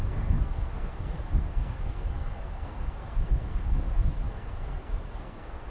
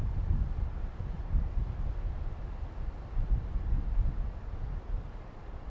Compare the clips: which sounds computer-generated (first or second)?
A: first